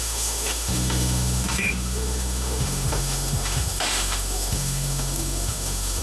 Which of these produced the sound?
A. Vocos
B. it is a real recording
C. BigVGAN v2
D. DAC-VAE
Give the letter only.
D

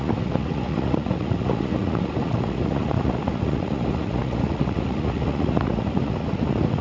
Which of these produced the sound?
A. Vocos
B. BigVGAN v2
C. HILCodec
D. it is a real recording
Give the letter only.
A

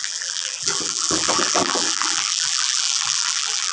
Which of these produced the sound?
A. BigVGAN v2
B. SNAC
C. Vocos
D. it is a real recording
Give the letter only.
A